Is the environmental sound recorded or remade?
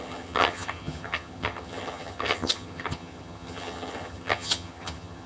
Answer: remade